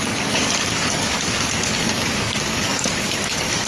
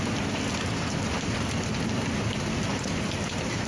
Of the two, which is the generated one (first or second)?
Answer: first